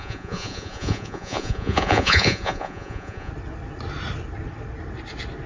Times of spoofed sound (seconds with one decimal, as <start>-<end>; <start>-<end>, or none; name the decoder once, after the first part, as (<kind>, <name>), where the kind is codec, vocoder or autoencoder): 0.0-3.3 (vocoder, Vocos)